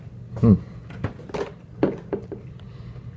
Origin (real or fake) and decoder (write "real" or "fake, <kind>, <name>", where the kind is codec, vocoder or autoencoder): real